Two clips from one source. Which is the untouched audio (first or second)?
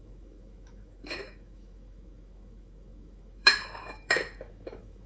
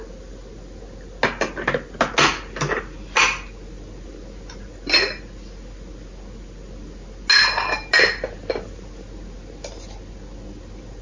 second